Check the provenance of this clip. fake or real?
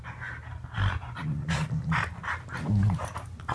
real